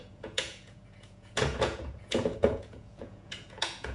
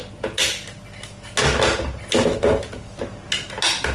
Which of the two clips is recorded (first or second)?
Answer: second